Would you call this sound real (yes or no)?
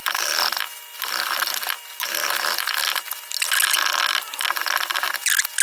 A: yes